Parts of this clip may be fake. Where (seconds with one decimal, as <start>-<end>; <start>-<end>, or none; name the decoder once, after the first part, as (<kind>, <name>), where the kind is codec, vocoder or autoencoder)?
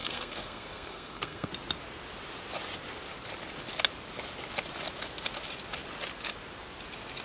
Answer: 0.0-1.5 (codec, SNAC)